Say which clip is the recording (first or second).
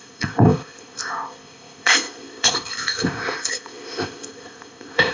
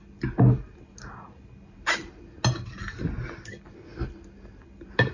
second